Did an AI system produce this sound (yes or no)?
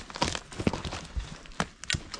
no